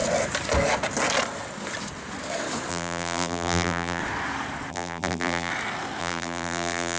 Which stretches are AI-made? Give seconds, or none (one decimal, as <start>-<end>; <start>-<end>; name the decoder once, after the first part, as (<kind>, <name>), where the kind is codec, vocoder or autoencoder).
2.7-4.0 (vocoder, BigVGAN v2); 4.7-5.5; 6.0-7.0